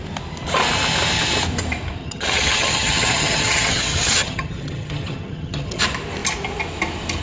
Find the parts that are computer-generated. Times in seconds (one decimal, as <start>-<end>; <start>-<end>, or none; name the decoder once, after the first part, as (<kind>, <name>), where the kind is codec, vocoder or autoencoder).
2.0-5.8 (vocoder, HiFi-GAN)